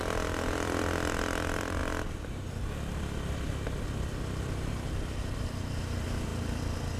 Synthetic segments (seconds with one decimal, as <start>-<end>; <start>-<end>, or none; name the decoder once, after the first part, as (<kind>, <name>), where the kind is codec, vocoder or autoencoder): 0.0-1.8 (vocoder, BigVGAN v2); 4.7-7.0